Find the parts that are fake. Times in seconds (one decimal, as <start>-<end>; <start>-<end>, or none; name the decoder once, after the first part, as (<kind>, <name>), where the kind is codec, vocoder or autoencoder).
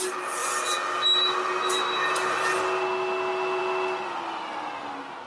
none